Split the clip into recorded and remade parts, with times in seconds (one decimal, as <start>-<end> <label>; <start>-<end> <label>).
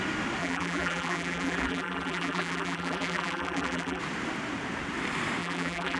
0.0-0.4 recorded; 0.4-4.0 remade; 4.0-5.4 recorded; 5.4-6.0 remade